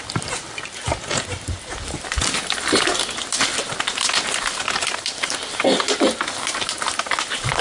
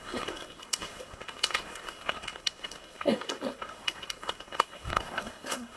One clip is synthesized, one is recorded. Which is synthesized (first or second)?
second